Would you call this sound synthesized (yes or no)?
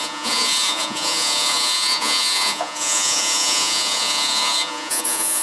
yes